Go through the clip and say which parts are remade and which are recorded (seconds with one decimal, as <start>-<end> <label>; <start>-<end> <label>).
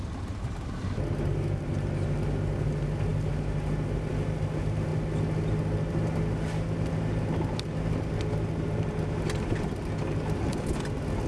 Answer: 0.0-11.3 recorded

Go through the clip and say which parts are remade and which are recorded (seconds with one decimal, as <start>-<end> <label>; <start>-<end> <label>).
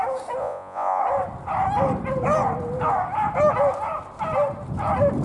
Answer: 0.0-0.4 recorded; 0.4-1.0 remade; 1.0-5.2 recorded